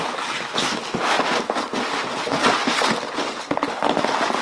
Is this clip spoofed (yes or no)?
no